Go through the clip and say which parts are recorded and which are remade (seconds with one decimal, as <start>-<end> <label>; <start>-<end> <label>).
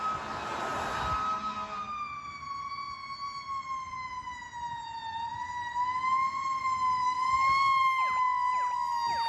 0.0-9.3 recorded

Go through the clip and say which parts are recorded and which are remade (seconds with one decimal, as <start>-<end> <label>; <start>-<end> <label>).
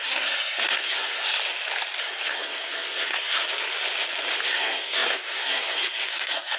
0.0-1.3 remade; 1.3-2.0 recorded; 2.0-3.4 remade; 3.4-4.4 recorded; 4.4-6.6 remade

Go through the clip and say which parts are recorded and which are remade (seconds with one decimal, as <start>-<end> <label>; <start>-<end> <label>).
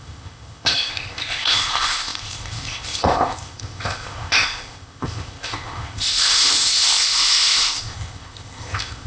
0.0-9.1 remade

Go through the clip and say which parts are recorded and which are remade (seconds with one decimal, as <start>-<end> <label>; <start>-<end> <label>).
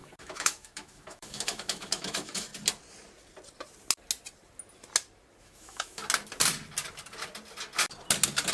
0.0-2.5 remade; 2.5-5.4 recorded; 5.4-6.0 remade; 6.0-8.5 recorded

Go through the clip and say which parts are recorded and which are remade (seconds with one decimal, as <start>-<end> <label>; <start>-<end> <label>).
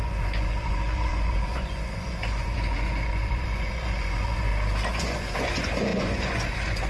0.0-4.5 remade; 4.5-5.0 recorded; 5.0-6.9 remade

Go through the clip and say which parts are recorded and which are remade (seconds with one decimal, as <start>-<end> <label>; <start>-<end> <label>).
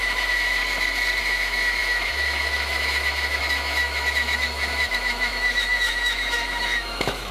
0.0-0.6 remade; 0.6-1.2 recorded; 1.2-7.3 remade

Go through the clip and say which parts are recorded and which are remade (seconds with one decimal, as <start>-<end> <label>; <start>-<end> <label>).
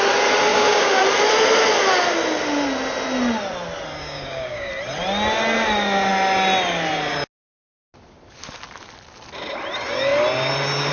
0.0-0.5 recorded; 0.5-1.0 remade; 1.0-4.0 recorded; 4.0-4.7 remade; 4.7-10.9 recorded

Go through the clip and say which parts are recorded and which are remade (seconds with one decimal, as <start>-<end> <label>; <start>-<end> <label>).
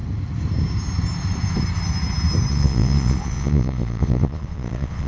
0.0-2.5 recorded; 2.5-5.1 remade